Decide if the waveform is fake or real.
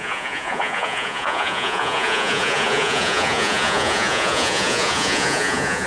fake